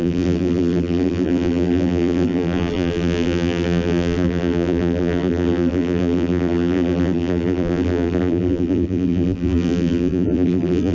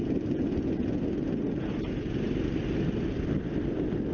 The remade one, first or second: first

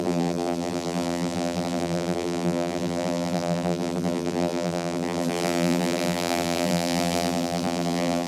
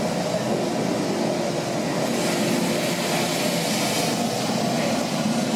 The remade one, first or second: first